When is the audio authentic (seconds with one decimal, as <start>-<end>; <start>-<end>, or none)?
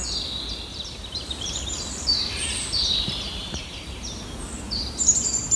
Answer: 0.0-0.7; 1.6-3.4; 4.8-5.6